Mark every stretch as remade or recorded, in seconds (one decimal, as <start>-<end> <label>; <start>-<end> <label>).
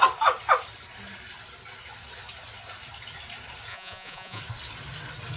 0.0-3.7 recorded; 3.7-4.4 remade; 4.4-5.4 recorded